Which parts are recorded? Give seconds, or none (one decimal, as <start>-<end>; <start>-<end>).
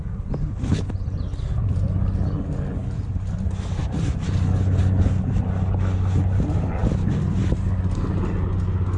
0.0-2.8; 3.3-6.8; 7.4-9.0